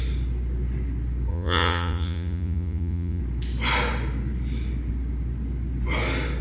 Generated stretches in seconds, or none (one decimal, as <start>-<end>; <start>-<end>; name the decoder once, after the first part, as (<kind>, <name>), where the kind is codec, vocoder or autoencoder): 1.3-3.2 (vocoder, Vocos)